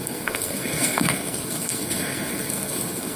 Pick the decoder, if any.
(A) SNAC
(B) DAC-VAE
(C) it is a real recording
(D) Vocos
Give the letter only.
A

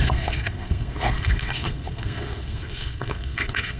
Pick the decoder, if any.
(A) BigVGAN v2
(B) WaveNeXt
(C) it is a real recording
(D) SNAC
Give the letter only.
D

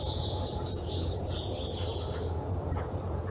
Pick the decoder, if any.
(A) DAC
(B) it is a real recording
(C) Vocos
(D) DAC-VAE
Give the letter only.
C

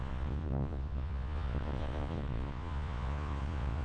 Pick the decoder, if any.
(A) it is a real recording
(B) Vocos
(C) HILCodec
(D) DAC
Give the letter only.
B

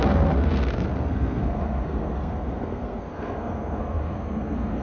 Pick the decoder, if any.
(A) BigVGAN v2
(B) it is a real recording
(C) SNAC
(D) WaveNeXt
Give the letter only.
C